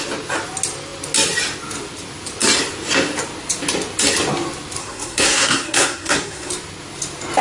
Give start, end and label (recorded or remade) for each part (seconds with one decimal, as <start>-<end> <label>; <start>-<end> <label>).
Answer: 0.0-4.8 recorded; 4.8-6.5 remade; 6.5-7.4 recorded